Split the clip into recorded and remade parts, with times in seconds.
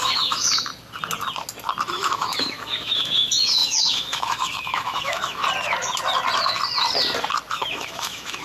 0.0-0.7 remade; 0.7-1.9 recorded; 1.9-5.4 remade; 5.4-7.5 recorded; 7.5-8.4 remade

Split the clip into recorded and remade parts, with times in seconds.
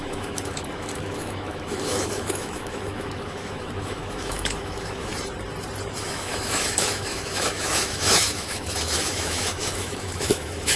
0.0-5.1 remade; 5.1-6.0 recorded; 6.0-10.8 remade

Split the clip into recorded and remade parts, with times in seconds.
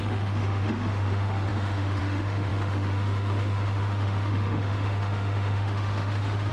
0.0-6.5 remade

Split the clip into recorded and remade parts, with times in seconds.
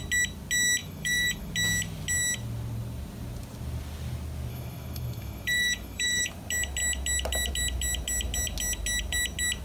0.0-0.8 recorded; 0.8-1.5 remade; 1.5-4.5 recorded; 4.5-6.3 remade; 6.3-9.6 recorded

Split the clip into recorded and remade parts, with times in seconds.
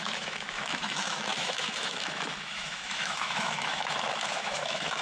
0.0-5.0 remade